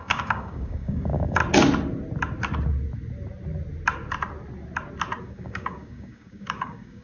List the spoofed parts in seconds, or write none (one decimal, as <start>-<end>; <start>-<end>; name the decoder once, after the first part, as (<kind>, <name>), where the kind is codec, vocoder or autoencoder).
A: 0.0-1.4 (codec, DAC); 5.2-7.0